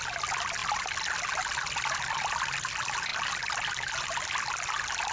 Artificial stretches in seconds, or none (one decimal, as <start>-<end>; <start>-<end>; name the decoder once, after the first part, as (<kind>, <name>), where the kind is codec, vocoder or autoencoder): none